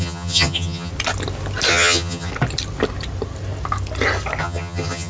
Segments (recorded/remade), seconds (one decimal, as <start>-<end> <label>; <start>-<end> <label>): 0.0-0.9 remade; 0.9-1.7 recorded; 1.7-2.3 remade; 2.3-4.4 recorded; 4.4-5.1 remade